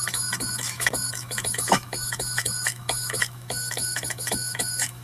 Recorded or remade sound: remade